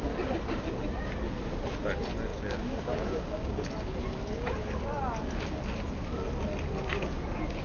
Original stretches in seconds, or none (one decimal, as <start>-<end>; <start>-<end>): 0.0-2.3; 3.7-7.6